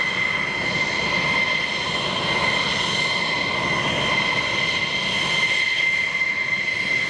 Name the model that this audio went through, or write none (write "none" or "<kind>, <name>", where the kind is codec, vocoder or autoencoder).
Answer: none